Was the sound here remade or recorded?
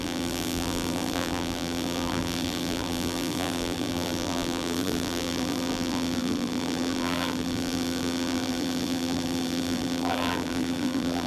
remade